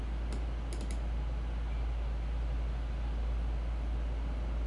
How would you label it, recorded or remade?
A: recorded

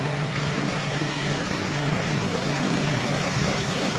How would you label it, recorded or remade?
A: remade